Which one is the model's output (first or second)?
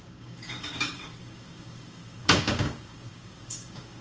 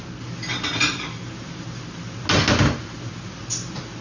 first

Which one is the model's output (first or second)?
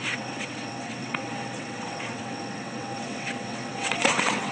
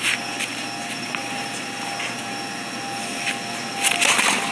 first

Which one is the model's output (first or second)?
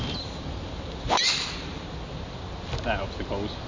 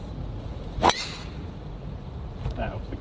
second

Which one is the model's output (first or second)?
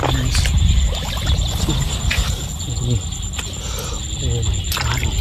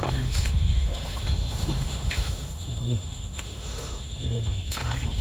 second